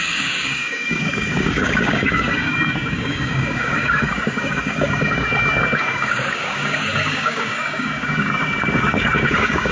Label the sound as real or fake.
fake